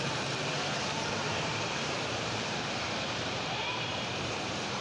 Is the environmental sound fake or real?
fake